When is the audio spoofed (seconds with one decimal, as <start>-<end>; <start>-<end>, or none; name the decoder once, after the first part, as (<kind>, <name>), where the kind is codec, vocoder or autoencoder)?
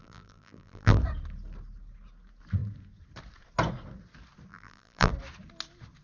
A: 0.0-1.0 (vocoder, BigVGAN v2); 4.5-5.1